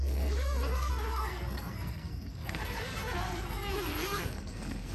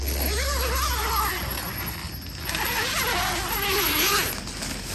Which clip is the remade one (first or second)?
first